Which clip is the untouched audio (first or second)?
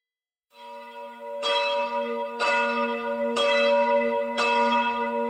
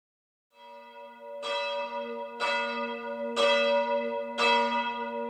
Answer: second